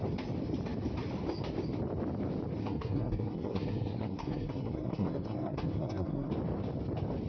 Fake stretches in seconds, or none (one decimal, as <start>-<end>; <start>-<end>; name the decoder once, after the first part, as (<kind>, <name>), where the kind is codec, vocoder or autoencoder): 2.6-6.3 (codec, SNAC)